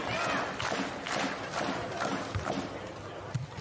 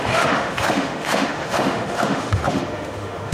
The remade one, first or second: second